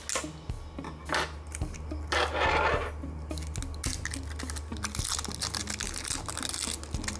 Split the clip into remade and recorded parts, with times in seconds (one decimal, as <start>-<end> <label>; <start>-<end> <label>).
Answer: 0.0-7.2 recorded